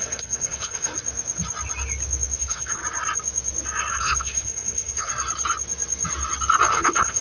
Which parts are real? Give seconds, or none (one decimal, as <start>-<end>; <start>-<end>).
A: 0.9-2.4; 2.8-3.9; 5.1-6.7